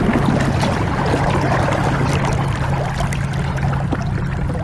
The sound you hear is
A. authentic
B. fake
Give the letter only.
A